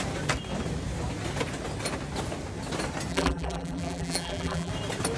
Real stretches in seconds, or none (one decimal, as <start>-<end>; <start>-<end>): 0.0-3.1; 4.7-5.2